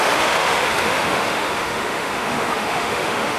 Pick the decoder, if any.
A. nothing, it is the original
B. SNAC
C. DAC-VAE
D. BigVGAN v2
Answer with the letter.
C